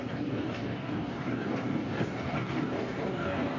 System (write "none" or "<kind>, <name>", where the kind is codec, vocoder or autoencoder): codec, DAC